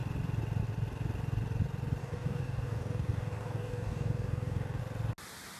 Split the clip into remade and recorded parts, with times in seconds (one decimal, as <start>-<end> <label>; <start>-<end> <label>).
0.0-2.0 recorded; 2.0-4.8 remade; 4.8-5.6 recorded